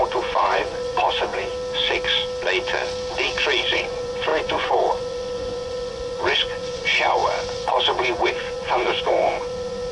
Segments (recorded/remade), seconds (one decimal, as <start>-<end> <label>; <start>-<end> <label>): 0.0-1.5 remade; 1.5-3.6 recorded; 3.6-9.9 remade